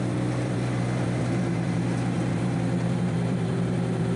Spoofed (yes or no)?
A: yes